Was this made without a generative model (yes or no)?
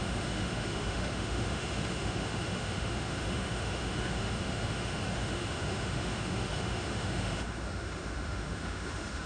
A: no